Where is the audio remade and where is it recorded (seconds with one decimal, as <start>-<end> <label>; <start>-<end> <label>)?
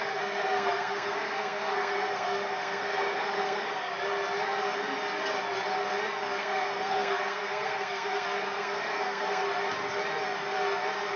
0.0-3.9 remade; 3.9-6.4 recorded; 6.4-9.4 remade; 9.4-11.2 recorded